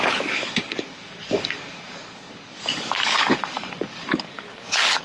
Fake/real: fake